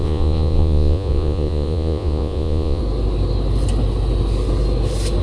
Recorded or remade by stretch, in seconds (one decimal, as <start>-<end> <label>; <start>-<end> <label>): 0.0-2.8 remade; 2.8-5.2 recorded

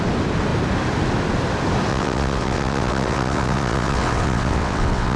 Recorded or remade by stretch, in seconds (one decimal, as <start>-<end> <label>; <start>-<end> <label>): 0.0-1.9 recorded; 1.9-5.2 remade

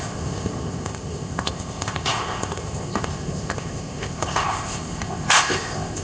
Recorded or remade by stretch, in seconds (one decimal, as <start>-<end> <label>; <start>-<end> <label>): 0.0-6.0 remade

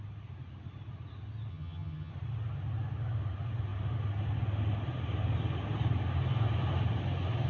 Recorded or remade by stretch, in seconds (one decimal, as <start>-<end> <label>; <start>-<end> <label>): 0.0-1.5 recorded; 1.5-2.1 remade; 2.1-7.5 recorded

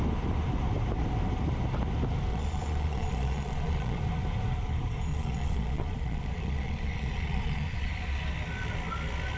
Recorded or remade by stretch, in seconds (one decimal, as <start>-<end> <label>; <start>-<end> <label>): 0.0-2.3 recorded; 2.3-4.0 remade; 4.0-5.1 recorded; 5.1-7.9 remade; 7.9-9.4 recorded

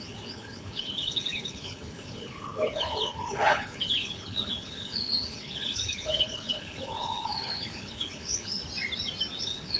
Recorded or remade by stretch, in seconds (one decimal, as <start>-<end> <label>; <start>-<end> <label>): 0.0-8.6 remade; 8.6-9.4 recorded; 9.4-9.8 remade